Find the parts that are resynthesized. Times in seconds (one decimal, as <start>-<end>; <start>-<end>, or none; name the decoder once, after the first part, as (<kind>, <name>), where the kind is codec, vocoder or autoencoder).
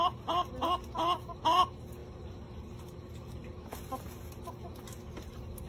2.0-2.8 (vocoder, BigVGAN v2)